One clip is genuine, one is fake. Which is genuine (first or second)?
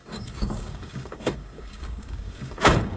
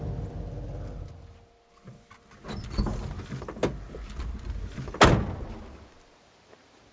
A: second